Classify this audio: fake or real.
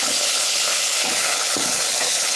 fake